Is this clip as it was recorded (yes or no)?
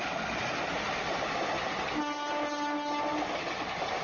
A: yes